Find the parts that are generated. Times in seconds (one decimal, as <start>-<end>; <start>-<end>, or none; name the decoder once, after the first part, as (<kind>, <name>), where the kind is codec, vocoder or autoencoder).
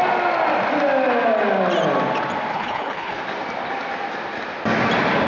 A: 2.5-3.2 (codec, HILCodec)